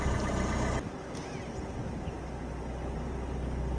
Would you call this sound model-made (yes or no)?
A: no